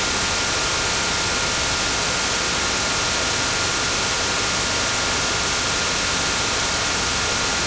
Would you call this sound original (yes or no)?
yes